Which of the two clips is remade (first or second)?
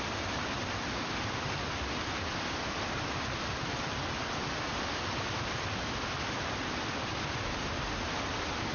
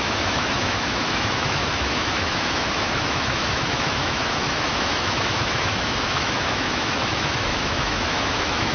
second